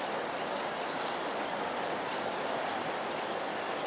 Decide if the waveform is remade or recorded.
recorded